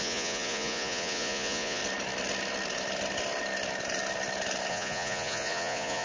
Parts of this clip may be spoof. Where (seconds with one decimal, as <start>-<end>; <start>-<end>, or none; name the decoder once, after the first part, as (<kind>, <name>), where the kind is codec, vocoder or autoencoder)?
0.0-1.8 (vocoder, Vocos); 4.7-6.0